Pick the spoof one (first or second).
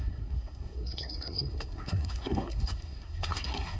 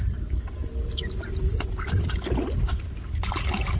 first